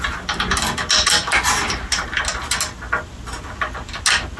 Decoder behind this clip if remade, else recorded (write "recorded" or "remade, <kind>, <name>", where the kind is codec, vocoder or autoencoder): recorded